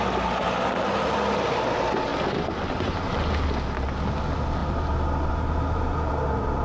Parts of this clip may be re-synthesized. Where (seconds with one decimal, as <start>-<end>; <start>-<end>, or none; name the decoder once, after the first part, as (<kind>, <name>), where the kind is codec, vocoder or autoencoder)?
none